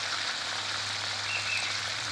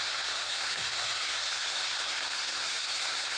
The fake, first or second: second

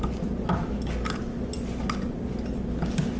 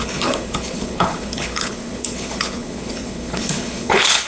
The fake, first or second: second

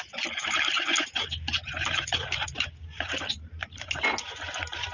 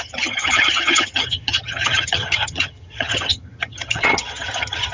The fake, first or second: second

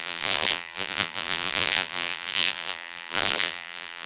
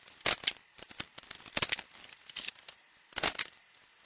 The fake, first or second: first